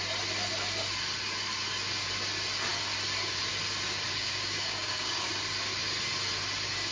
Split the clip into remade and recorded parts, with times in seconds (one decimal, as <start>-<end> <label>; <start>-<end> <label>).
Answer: 0.0-4.1 recorded; 4.1-5.3 remade; 5.3-6.9 recorded